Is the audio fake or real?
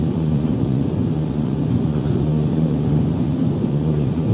fake